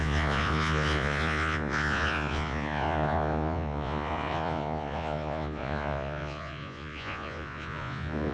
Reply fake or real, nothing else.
fake